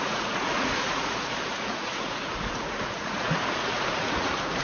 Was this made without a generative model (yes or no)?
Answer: no